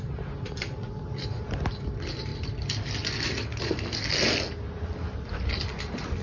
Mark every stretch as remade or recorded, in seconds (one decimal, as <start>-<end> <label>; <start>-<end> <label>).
0.0-6.2 recorded